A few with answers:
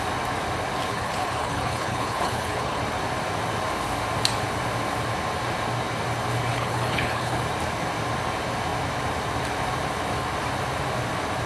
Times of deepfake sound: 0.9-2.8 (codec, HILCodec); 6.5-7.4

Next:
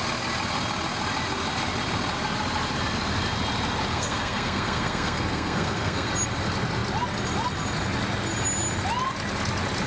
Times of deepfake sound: 3.9-6.1 (codec, SNAC)

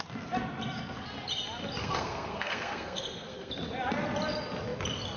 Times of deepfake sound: 1.8-3.5 (codec, SNAC)

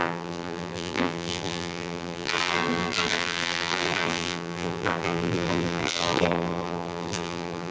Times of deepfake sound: 0.0-7.7 (vocoder, BigVGAN v2)